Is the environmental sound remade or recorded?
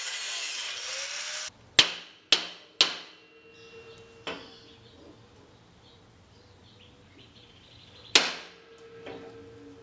recorded